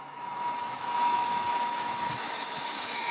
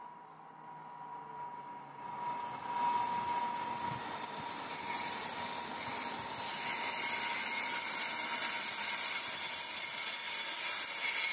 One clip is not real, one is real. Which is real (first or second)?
second